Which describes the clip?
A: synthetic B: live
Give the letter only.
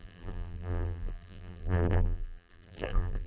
A